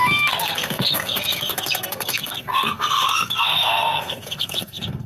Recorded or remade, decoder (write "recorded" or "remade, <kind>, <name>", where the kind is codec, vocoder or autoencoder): remade, codec, SNAC